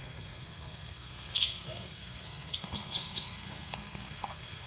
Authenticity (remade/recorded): remade